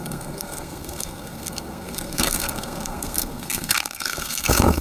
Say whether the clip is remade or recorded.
remade